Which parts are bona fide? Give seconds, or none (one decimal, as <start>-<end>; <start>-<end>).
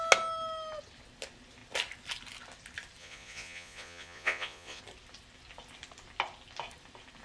0.0-3.0; 4.8-7.2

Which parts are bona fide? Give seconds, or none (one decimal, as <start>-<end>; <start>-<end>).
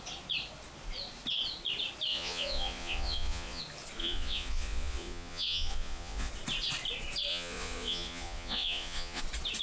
0.0-2.1; 3.6-4.0; 6.3-7.3; 9.2-9.6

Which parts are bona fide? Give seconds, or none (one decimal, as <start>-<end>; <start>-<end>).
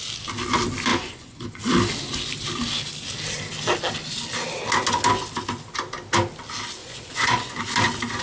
0.0-0.9; 1.6-6.8; 7.6-8.2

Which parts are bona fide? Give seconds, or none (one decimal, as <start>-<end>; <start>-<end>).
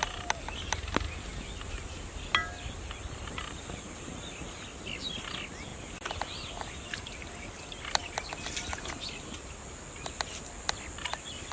0.0-11.5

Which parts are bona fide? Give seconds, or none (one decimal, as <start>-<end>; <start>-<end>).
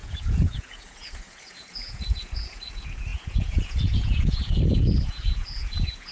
none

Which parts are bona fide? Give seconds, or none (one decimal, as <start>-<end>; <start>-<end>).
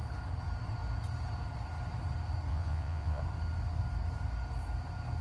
0.0-2.5; 3.2-5.2